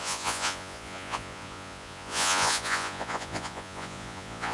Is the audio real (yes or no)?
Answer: no